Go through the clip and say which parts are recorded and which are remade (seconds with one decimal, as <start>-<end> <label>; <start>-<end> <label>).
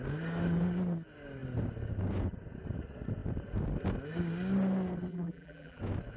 0.0-5.1 recorded; 5.1-5.8 remade; 5.8-6.2 recorded